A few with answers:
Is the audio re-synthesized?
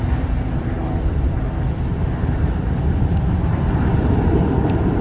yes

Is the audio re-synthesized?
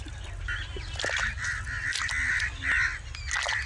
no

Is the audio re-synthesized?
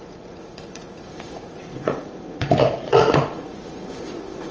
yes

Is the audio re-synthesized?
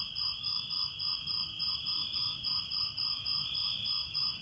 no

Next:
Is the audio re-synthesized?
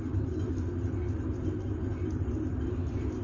no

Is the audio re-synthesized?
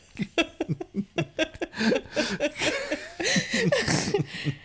no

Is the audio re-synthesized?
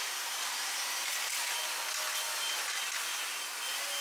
no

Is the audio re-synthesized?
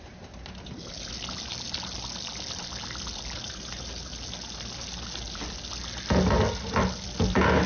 no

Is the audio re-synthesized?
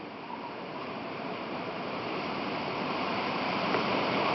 yes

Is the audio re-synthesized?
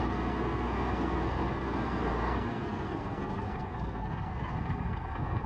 yes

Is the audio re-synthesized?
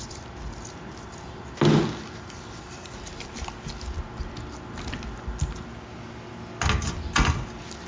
no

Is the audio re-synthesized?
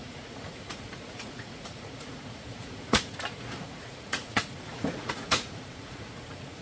yes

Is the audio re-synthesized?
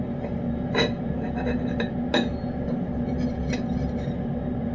no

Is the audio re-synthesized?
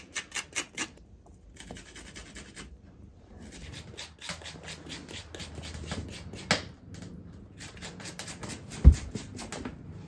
no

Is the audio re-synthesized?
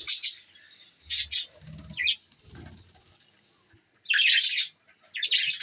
no